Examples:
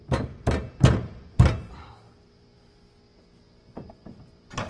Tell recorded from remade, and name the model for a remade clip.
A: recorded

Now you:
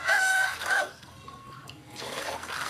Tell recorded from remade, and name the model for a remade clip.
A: remade, codec, SNAC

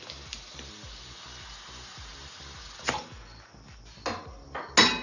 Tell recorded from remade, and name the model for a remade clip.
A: recorded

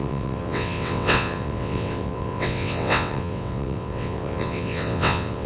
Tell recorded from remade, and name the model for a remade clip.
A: remade, vocoder, WaveNeXt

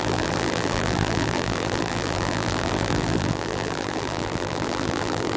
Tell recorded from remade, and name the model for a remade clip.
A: remade, vocoder, BigVGAN v2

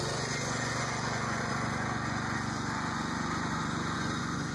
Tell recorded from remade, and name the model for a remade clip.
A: remade, vocoder, Vocos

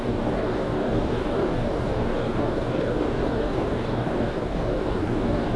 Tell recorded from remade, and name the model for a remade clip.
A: remade, codec, DAC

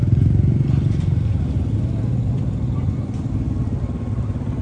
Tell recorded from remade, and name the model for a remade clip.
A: recorded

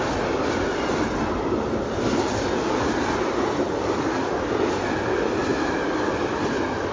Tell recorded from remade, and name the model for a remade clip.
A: recorded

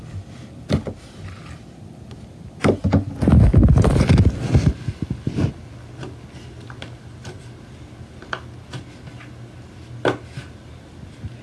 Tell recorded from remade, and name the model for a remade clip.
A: recorded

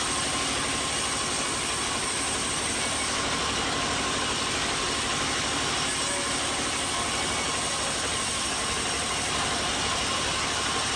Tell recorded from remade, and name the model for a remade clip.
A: recorded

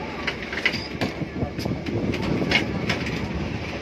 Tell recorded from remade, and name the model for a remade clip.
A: recorded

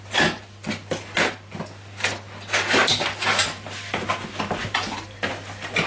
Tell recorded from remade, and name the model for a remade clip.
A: recorded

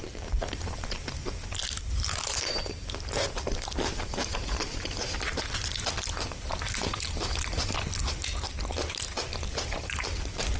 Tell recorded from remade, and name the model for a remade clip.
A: recorded